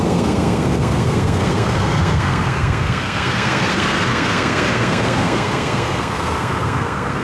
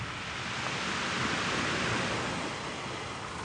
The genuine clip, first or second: second